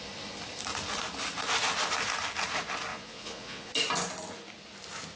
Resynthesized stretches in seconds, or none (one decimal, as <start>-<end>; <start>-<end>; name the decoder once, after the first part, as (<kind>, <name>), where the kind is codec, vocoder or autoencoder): 2.9-3.7 (vocoder, Vocos)